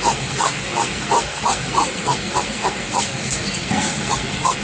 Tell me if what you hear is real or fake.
fake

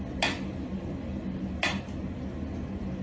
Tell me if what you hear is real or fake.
real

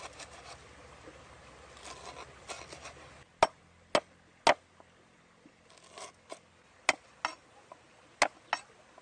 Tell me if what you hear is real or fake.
real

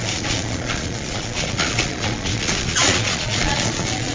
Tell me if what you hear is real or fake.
fake